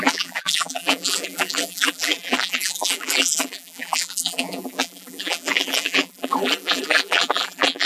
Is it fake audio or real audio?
fake